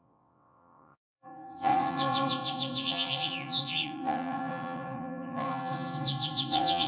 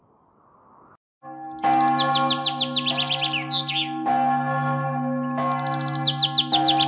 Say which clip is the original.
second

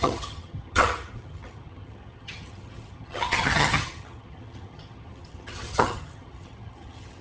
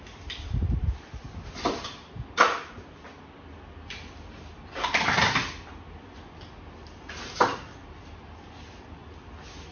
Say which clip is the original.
second